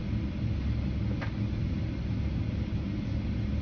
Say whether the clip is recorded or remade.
recorded